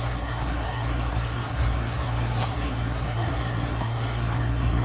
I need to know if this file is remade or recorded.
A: remade